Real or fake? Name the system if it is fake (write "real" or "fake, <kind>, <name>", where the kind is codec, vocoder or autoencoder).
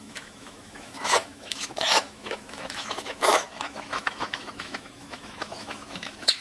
fake, autoencoder, DAC-VAE